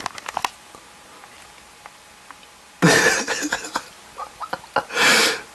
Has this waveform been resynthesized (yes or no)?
no